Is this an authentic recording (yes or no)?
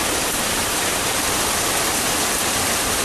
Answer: yes